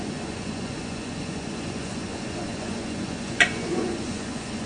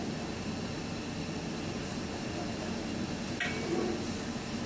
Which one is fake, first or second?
first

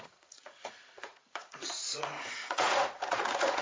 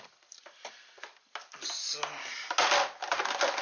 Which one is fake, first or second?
first